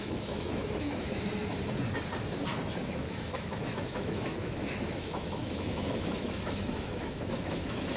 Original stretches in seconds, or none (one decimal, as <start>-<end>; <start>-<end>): 1.3-2.8